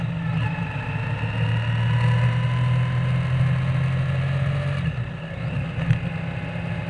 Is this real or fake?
real